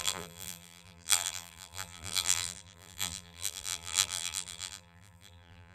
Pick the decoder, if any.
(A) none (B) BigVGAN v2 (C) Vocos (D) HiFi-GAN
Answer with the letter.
B